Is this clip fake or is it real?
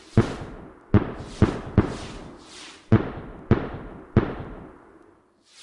fake